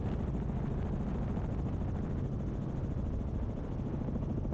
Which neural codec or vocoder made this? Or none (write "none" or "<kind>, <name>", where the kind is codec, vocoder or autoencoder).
none